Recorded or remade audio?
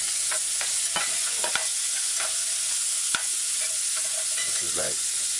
remade